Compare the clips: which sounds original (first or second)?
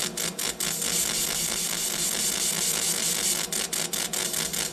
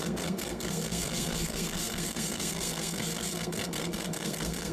first